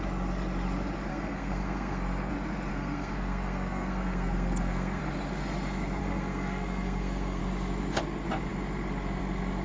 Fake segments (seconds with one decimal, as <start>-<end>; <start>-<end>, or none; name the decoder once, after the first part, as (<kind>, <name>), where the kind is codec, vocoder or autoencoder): 1.1-2.3 (codec, SNAC); 2.7-5.0; 6.0-7.4